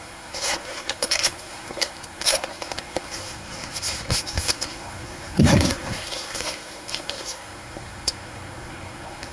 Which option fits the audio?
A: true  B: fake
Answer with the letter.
B